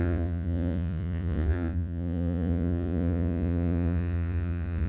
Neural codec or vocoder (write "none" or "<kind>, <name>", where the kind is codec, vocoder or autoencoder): vocoder, Vocos